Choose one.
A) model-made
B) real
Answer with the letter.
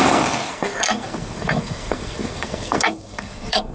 A